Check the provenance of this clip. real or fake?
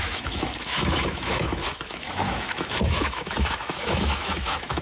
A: fake